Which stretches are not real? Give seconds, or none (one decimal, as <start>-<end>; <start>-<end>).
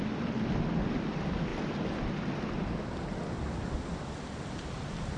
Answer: none